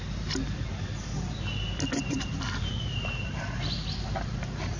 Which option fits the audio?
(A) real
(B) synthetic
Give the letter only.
A